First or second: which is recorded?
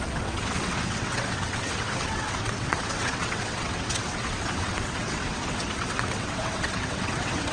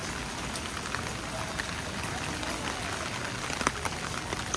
second